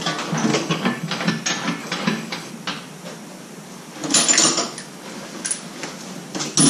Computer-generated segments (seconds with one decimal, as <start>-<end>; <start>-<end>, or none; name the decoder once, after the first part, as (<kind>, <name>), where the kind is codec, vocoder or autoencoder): 0.5-1.3 (codec, DAC); 1.8-2.5